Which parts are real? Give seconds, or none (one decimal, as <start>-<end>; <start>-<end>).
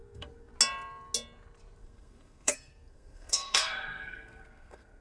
0.5-1.8